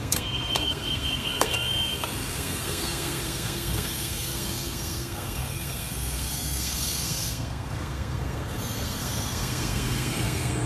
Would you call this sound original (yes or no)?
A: no